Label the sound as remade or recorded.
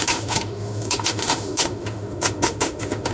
remade